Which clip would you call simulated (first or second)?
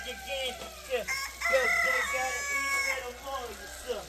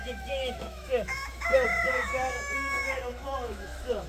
second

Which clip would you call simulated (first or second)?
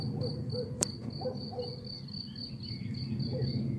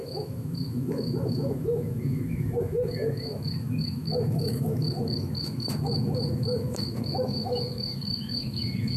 second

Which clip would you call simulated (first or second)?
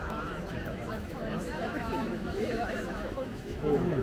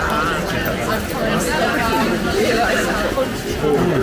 first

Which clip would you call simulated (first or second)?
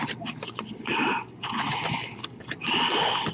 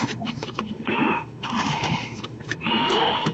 second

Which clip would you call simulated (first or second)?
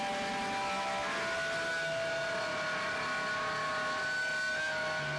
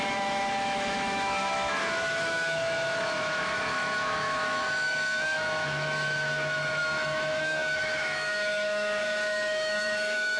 second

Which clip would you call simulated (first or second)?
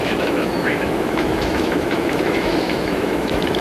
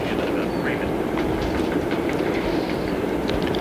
first